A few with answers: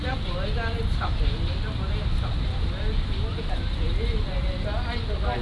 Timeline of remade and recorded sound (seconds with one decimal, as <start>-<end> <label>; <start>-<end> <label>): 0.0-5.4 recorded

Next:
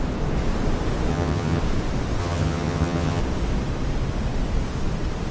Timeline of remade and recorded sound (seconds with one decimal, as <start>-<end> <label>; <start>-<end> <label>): 0.0-1.1 recorded; 1.1-1.6 remade; 1.6-2.2 recorded; 2.2-3.2 remade; 3.2-5.3 recorded

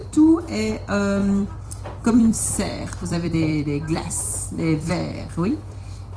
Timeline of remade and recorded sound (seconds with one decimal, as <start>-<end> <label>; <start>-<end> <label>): 0.0-0.7 remade; 0.7-1.2 recorded; 1.2-4.9 remade; 4.9-6.2 recorded

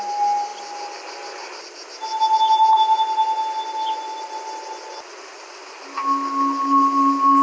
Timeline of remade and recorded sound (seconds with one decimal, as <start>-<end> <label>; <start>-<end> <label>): 0.0-7.4 recorded